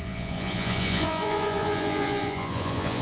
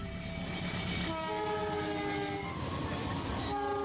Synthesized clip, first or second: first